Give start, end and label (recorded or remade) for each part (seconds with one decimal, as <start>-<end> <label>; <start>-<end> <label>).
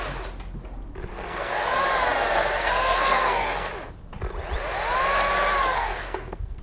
0.0-1.1 recorded; 1.1-1.7 remade; 1.7-2.6 recorded; 2.6-3.7 remade; 3.7-5.6 recorded; 5.6-6.6 remade